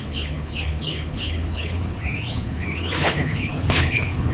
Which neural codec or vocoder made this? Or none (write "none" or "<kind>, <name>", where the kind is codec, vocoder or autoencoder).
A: codec, HILCodec